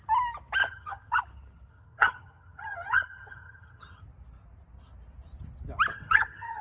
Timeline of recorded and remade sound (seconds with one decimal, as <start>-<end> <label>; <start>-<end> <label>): 0.0-0.6 recorded; 0.6-1.2 remade; 1.2-1.7 recorded; 1.7-4.0 remade; 4.0-5.9 recorded; 5.9-6.6 remade